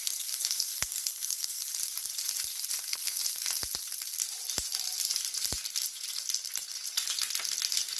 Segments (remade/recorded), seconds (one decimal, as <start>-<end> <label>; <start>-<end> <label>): 0.0-1.7 remade; 1.7-2.8 recorded; 2.8-3.2 remade; 3.2-8.0 recorded